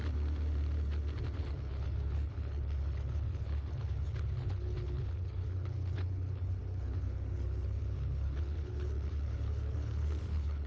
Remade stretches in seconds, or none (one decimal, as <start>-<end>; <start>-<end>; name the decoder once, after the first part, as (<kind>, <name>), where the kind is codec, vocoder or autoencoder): 1.4-10.7 (codec, HILCodec)